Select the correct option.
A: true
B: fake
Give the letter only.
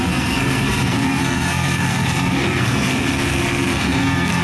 B